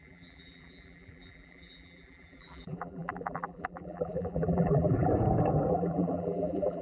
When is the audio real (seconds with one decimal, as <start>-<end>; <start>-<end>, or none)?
5.1-5.7